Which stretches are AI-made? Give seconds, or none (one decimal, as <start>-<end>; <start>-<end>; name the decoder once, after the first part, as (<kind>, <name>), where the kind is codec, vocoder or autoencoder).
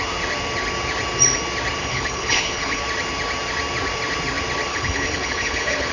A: 1.8-2.8 (codec, HILCodec); 4.7-5.9